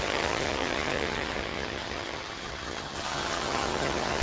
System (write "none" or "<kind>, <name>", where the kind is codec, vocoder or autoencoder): vocoder, HiFi-GAN